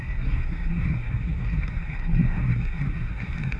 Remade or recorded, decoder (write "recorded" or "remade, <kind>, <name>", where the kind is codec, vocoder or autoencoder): remade, codec, SNAC